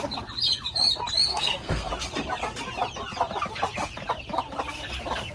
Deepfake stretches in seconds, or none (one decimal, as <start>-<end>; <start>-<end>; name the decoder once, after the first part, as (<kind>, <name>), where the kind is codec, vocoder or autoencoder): 1.3-1.9 (codec, SNAC)